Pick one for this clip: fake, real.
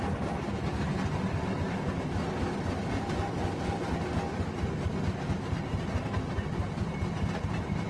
real